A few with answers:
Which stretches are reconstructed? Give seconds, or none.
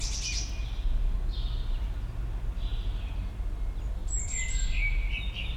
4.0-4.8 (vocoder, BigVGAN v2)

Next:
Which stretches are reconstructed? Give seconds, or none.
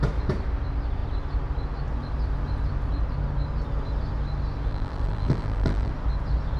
4.7-5.9 (vocoder, BigVGAN v2)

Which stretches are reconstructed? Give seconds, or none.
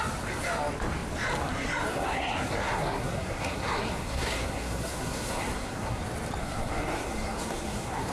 1.9-6.0 (codec, SNAC); 6.4-8.1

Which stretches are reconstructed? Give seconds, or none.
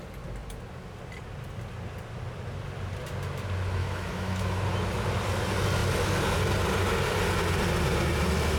3.8-4.6 (autoencoder, DAC-VAE)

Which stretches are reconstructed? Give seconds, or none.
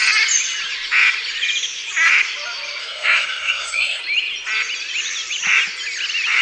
2.8-4.0 (codec, SNAC)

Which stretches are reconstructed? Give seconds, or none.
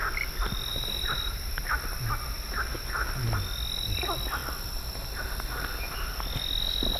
0.7-1.5 (vocoder, BigVGAN v2)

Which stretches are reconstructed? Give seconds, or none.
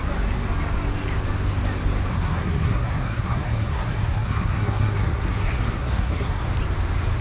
2.1-6.4 (codec, SNAC)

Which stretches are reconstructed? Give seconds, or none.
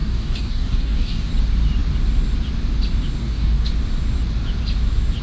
0.0-1.3 (codec, DAC); 3.2-3.7